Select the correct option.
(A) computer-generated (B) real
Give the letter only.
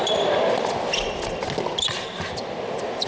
B